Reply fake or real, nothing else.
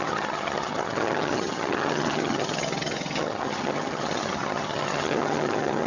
fake